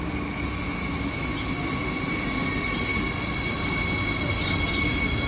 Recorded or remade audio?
recorded